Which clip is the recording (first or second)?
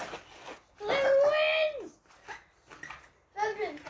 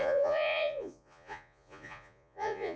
first